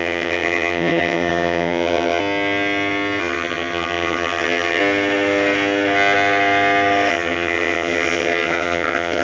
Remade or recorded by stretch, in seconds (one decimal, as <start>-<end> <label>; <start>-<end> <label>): 0.0-2.2 remade; 2.2-3.2 recorded; 3.2-4.8 remade; 4.8-7.1 recorded; 7.1-9.2 remade